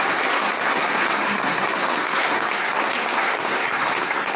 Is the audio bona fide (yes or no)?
no